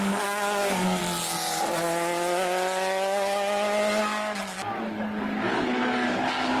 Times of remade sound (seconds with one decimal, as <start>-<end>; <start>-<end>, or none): 0.0-1.0; 4.0-6.6

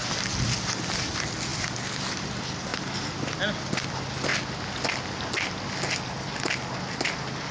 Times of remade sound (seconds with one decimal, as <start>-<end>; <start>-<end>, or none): none

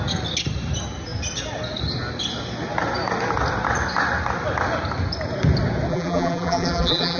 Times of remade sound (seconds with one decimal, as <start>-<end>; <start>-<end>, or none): 5.9-7.2

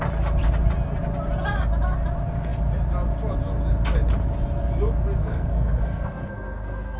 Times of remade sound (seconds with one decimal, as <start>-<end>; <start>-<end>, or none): 5.2-7.0

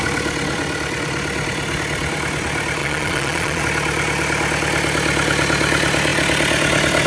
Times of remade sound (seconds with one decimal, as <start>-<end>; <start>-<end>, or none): 2.8-3.6

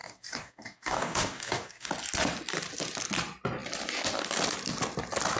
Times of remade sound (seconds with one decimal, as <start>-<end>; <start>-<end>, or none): 0.0-1.9

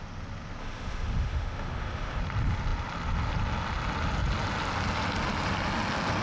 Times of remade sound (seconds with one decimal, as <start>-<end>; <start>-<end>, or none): 0.6-2.2